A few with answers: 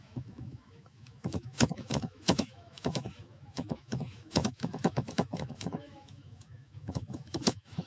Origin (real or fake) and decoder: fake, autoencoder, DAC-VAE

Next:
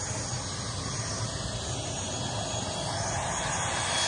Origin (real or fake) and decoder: real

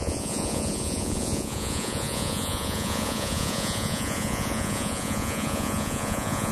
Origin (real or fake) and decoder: fake, vocoder, Vocos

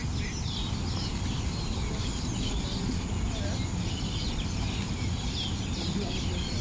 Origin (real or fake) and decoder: real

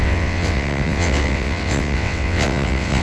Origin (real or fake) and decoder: fake, vocoder, WaveNeXt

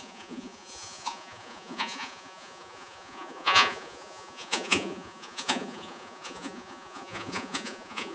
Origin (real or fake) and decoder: fake, vocoder, Vocos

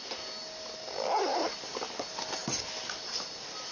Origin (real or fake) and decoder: real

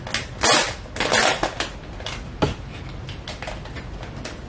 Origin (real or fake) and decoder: real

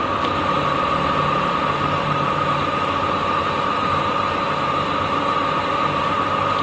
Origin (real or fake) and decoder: fake, vocoder, BigVGAN v2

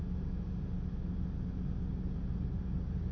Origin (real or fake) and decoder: real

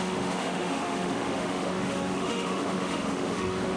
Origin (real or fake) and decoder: fake, autoencoder, DAC-VAE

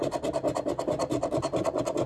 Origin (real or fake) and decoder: real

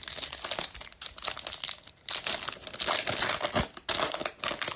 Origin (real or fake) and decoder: real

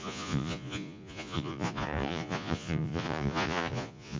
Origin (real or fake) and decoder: fake, vocoder, Vocos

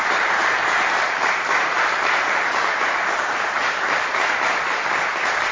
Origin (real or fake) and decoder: fake, vocoder, BigVGAN v2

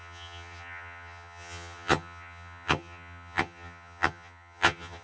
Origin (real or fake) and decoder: fake, vocoder, HiFi-GAN